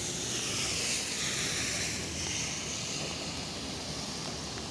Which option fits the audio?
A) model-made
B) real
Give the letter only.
B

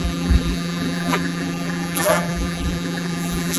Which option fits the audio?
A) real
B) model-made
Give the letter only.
B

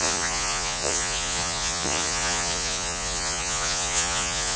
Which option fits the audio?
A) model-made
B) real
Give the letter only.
A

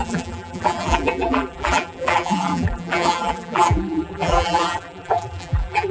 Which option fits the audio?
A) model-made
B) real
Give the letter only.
A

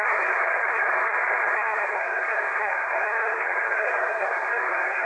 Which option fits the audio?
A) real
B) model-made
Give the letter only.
B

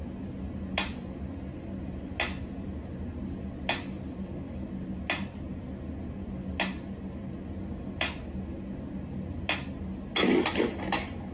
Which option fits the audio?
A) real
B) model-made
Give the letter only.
A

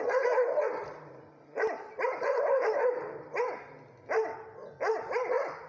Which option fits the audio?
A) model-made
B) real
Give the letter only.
B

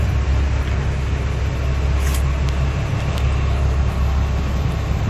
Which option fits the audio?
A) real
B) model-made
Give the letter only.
A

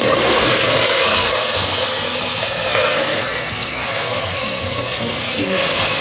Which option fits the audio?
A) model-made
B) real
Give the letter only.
A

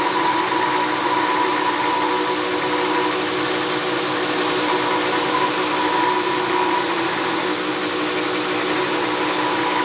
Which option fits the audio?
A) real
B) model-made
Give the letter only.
A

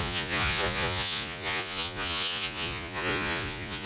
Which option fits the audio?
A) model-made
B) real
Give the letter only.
A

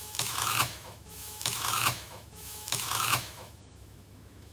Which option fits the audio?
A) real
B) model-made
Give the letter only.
B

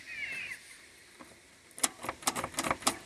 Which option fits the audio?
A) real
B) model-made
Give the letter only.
A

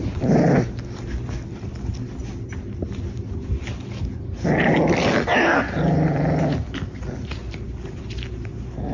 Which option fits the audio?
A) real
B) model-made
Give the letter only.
A